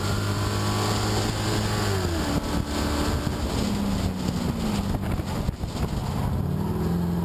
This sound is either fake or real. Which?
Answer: real